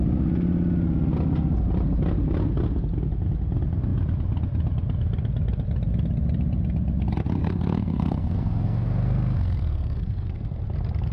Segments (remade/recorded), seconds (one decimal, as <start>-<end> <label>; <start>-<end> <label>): 0.0-7.4 recorded; 7.4-10.6 remade; 10.6-11.1 recorded